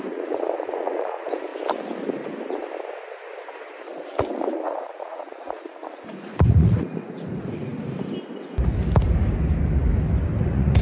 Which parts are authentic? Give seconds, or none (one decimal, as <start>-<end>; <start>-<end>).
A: 1.5-4.4; 7.7-10.4

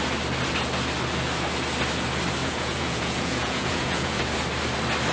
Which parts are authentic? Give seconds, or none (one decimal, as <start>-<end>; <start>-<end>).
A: 0.0-2.4; 4.2-5.1

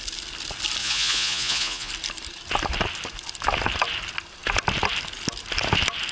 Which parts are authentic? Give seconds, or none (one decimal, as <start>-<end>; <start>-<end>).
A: 0.0-0.8; 1.9-6.1

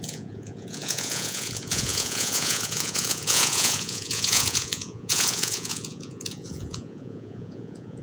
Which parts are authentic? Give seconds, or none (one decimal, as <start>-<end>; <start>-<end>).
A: none

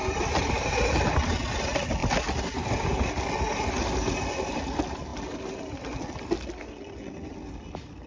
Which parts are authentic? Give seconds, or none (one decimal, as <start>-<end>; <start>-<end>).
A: 0.0-8.1